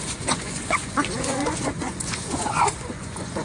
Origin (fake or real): fake